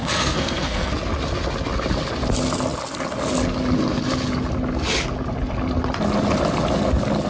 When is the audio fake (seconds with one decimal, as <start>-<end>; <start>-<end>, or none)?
0.0-0.9